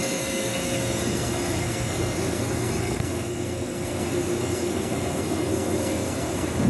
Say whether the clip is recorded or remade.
remade